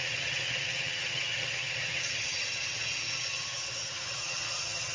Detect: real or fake fake